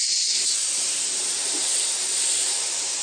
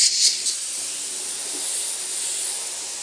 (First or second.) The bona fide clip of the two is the second